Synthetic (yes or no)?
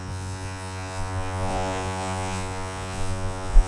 yes